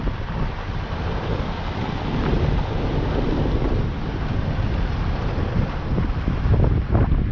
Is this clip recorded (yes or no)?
yes